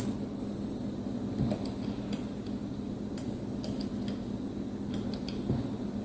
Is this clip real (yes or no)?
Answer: yes